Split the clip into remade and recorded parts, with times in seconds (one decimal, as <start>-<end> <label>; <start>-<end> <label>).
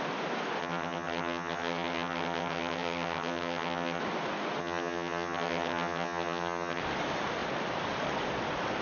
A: 0.0-0.6 recorded; 0.6-4.0 remade; 4.0-4.6 recorded; 4.6-6.8 remade; 6.8-8.8 recorded